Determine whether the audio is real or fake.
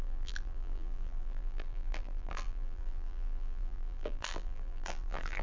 fake